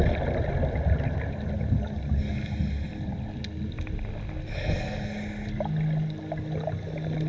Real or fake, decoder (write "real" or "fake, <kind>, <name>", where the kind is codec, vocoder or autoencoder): real